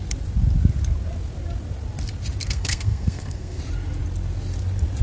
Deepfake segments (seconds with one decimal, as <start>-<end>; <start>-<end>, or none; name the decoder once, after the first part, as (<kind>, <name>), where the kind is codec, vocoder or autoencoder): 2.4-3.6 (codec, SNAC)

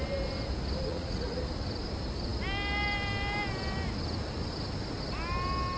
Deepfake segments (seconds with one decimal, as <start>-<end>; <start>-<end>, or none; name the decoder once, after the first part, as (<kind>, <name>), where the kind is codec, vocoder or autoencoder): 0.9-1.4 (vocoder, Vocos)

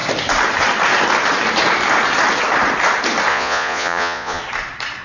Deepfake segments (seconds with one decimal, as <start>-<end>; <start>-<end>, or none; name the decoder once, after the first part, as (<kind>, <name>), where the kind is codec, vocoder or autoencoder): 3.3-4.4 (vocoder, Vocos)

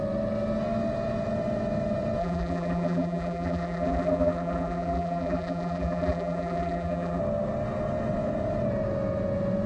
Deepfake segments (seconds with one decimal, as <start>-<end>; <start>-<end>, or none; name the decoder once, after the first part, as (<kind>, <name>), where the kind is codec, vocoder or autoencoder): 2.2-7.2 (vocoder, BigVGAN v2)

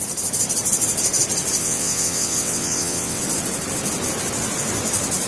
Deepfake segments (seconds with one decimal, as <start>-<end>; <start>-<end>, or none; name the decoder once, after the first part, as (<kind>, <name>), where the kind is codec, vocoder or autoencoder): 1.6-3.2 (vocoder, WaveNeXt)

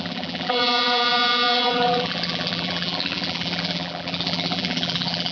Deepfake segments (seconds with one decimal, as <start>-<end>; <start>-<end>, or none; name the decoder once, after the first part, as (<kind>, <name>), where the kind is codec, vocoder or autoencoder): 0.0-5.3 (vocoder, BigVGAN v2)